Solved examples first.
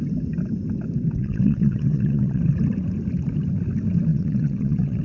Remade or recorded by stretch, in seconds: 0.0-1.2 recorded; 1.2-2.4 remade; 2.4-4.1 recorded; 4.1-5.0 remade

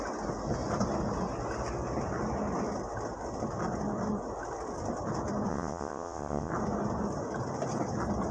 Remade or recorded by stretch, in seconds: 0.0-5.5 recorded; 5.5-6.5 remade; 6.5-8.3 recorded